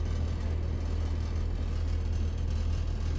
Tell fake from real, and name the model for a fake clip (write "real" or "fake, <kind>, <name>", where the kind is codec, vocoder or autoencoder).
real